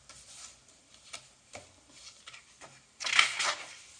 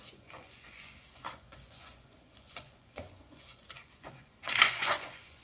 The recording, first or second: first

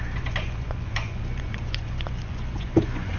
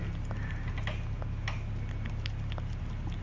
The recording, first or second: second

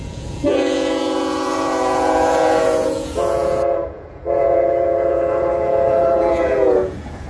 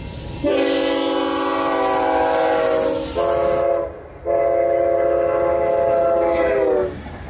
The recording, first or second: second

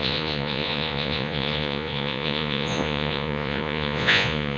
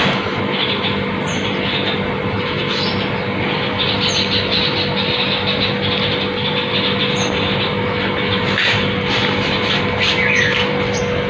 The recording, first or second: second